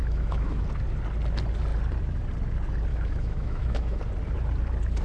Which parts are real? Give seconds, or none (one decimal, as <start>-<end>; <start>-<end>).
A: 0.6-2.9; 4.0-5.0